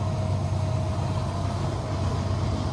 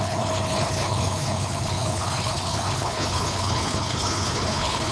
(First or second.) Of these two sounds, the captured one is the first